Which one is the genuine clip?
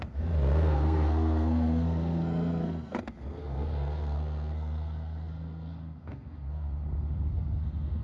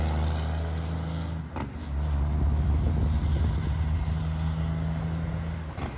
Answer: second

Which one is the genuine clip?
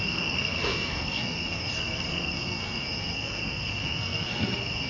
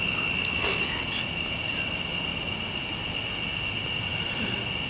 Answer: second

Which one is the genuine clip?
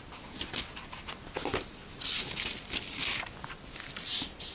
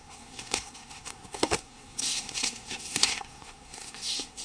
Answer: first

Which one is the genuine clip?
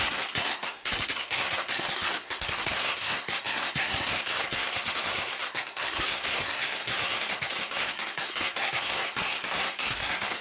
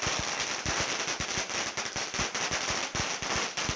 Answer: second